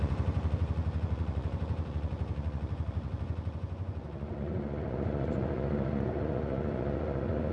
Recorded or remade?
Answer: remade